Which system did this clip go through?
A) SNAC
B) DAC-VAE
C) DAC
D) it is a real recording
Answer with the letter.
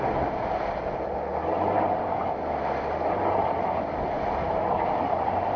D